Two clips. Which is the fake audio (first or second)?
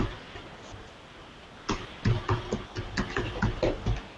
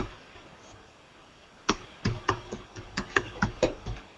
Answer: second